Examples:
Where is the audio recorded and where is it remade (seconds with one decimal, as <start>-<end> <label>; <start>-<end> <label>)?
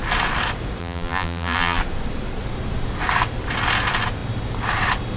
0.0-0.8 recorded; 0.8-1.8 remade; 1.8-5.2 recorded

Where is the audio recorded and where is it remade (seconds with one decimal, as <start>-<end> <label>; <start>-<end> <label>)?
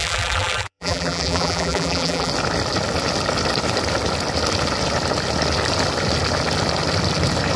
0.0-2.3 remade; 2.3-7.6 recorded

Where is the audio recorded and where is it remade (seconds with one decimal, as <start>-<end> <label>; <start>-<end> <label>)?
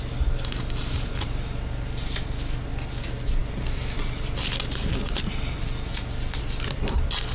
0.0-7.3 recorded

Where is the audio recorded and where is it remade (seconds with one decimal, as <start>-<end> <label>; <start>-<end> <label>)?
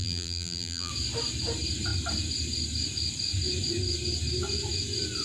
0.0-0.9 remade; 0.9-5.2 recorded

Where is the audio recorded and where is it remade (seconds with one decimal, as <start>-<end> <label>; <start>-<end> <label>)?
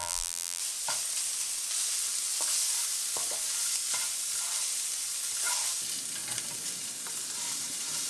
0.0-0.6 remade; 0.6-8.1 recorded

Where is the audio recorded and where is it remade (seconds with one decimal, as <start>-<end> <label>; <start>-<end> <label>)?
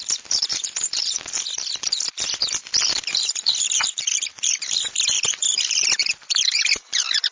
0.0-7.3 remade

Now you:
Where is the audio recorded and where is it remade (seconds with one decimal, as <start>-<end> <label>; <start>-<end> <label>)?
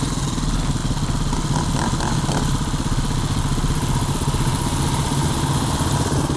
0.0-4.5 recorded; 4.5-5.3 remade; 5.3-6.4 recorded